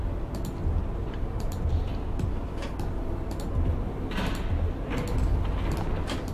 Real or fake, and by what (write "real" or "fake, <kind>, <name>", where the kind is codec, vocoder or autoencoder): real